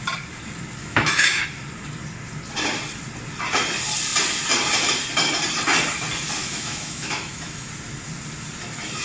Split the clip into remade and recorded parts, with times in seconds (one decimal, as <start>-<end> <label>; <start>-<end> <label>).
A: 0.0-0.8 recorded; 0.8-1.4 remade; 1.4-6.4 recorded; 6.4-7.7 remade; 7.7-9.0 recorded